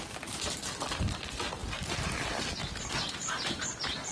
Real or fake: real